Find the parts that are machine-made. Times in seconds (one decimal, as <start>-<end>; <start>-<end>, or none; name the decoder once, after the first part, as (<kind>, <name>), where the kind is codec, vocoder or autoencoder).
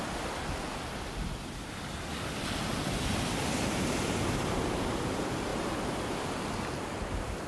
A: none